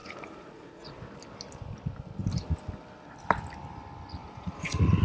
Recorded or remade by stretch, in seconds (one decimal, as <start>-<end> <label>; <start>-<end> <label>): 0.0-1.0 remade; 1.0-4.2 recorded; 4.2-5.0 remade